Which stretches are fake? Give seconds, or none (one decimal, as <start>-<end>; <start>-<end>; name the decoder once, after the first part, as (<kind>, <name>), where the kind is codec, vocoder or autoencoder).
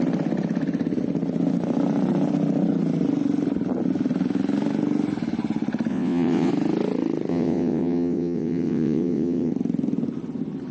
5.9-6.5 (vocoder, WaveNeXt); 7.3-9.5